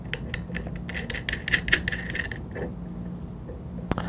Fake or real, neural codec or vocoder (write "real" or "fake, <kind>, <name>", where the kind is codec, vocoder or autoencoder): real